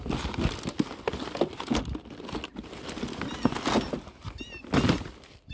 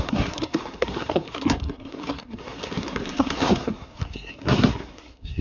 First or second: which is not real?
second